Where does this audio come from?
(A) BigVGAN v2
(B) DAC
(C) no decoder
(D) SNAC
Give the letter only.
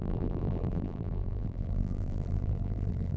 A